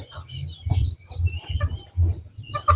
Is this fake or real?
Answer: real